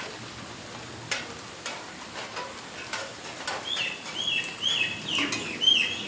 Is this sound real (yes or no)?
yes